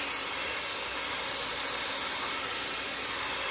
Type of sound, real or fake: real